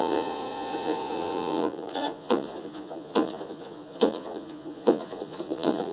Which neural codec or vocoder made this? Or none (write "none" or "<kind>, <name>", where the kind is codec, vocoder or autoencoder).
vocoder, Vocos